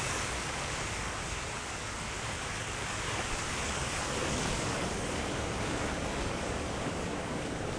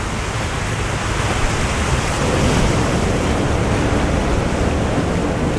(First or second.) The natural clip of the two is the second